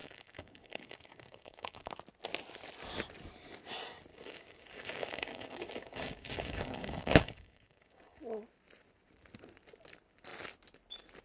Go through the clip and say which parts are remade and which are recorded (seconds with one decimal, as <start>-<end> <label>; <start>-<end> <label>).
0.0-1.9 remade; 1.9-4.1 recorded; 4.1-8.2 remade; 8.2-11.2 recorded